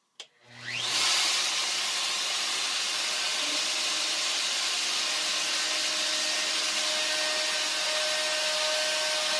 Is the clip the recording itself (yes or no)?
yes